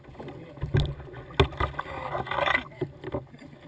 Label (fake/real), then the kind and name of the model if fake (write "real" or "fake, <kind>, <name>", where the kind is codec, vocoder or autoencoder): real